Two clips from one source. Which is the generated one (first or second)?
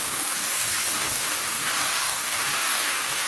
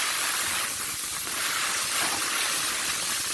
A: first